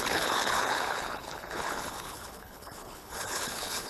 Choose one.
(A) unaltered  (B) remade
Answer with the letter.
B